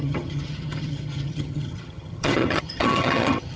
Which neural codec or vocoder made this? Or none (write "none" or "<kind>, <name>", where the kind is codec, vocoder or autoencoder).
vocoder, HiFi-GAN